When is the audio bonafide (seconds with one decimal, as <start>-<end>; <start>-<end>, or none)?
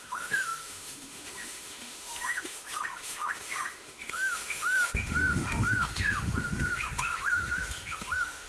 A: none